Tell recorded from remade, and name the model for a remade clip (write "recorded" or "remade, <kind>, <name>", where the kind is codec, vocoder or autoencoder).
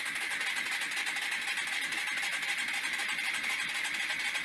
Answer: recorded